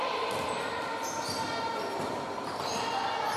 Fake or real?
real